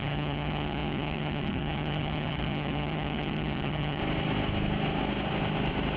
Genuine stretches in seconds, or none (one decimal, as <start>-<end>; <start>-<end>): 4.0-6.0